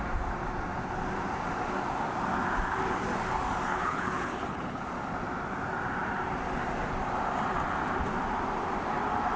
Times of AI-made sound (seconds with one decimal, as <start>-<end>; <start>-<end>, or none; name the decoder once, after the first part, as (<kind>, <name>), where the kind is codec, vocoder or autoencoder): 3.7-4.8 (codec, HILCodec)